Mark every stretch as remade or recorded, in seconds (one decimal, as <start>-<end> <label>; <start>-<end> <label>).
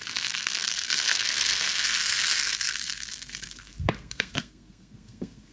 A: 0.0-5.5 remade